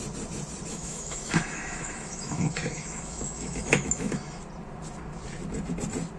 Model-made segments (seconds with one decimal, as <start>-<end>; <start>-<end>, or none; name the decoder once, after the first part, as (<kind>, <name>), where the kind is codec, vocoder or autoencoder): 0.7-4.4 (autoencoder, DAC-VAE)